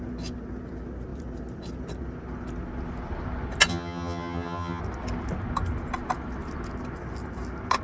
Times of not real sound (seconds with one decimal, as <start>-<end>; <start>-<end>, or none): 3.7-4.8